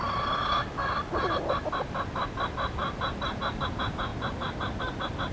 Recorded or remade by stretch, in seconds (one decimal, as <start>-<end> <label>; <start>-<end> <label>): 0.0-5.3 recorded